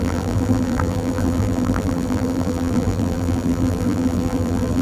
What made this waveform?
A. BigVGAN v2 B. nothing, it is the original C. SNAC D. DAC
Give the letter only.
A